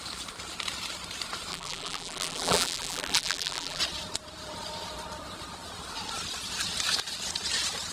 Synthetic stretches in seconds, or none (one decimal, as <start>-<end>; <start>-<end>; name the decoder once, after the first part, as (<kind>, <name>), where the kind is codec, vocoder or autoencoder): 1.5-3.8 (vocoder, BigVGAN v2)